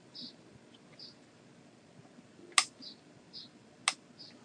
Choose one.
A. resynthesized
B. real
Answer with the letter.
B